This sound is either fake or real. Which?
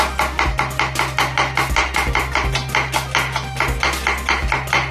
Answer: real